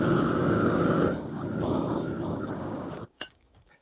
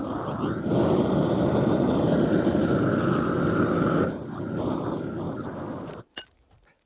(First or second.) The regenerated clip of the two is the first